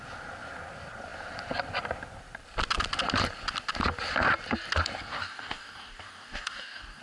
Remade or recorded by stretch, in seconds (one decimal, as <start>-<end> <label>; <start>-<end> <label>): 0.0-5.1 recorded; 5.1-7.0 remade